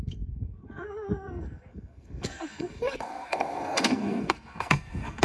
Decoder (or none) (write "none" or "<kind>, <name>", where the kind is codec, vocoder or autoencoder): codec, SNAC